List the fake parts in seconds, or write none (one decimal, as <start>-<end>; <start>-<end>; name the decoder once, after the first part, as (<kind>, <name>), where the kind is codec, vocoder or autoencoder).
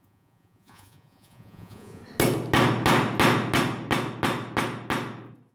0.0-2.0 (vocoder, Vocos)